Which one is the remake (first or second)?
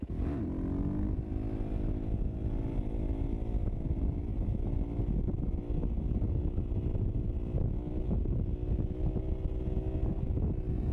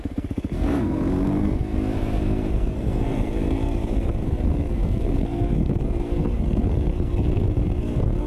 second